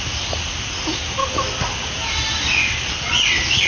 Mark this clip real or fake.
real